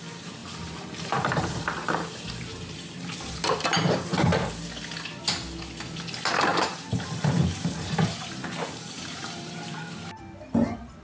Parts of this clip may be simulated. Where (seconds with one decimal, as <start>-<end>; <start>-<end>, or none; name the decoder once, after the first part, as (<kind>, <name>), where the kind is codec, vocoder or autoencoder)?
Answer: 0.4-4.2 (vocoder, BigVGAN v2); 6.5-9.9